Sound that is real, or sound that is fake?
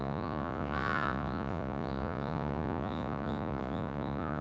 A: fake